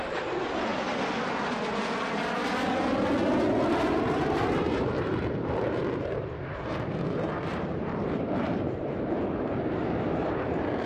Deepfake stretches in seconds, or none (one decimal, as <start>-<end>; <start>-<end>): 0.0-0.7; 3.8-10.9